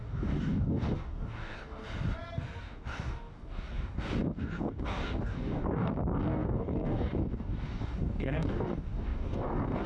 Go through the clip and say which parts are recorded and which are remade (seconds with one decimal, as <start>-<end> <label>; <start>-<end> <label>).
0.0-1.8 remade; 1.8-2.6 recorded; 2.6-9.9 remade